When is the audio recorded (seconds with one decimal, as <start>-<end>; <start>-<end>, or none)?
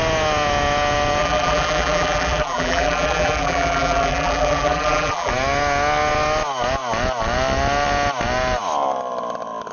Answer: 0.0-1.2; 5.3-9.7